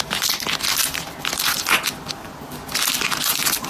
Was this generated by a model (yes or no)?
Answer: no